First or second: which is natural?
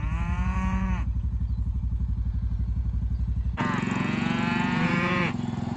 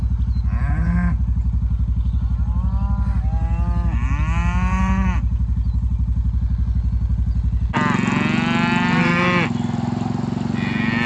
second